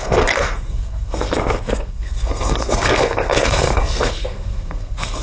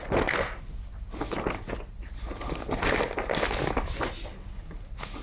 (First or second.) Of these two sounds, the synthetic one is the first